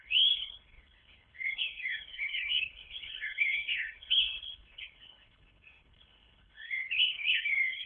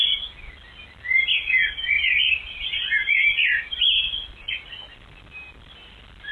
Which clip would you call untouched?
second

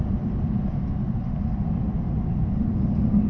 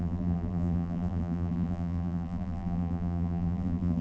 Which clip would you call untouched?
first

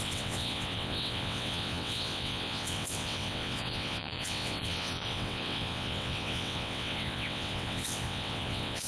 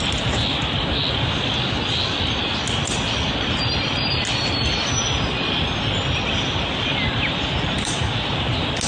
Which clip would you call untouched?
second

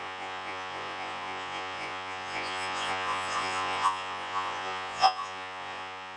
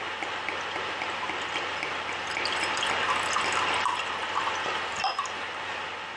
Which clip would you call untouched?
second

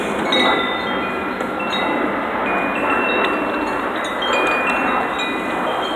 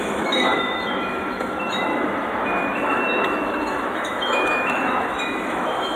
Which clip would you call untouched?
first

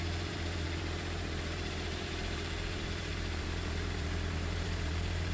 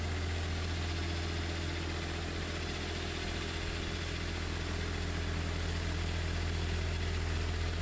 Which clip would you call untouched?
second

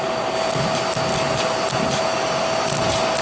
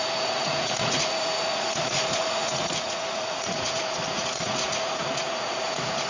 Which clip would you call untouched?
first